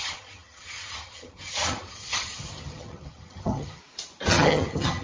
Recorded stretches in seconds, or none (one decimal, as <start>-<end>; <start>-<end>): 3.8-4.3